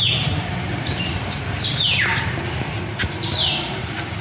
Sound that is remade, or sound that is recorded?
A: remade